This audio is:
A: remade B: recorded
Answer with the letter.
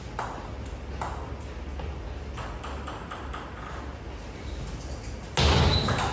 B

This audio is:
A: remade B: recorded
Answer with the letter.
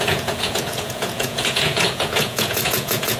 A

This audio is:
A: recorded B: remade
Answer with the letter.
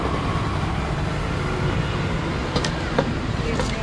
A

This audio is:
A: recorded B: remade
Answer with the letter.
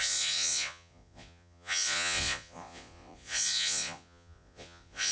B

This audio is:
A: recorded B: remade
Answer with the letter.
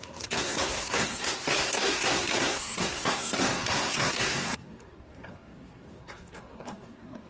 B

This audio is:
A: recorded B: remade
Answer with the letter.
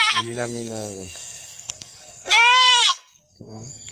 B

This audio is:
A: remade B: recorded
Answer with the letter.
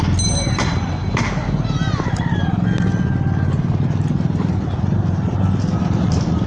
B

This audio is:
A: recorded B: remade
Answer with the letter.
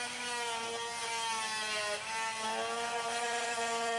A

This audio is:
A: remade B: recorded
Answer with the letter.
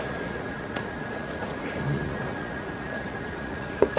A